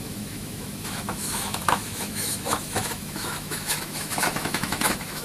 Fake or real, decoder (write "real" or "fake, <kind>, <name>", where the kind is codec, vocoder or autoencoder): fake, autoencoder, DAC-VAE